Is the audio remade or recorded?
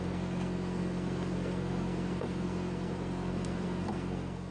remade